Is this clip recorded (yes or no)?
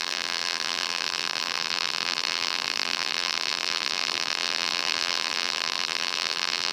no